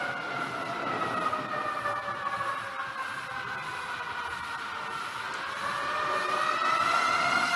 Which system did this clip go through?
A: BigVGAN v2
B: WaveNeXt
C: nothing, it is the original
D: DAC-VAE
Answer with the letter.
C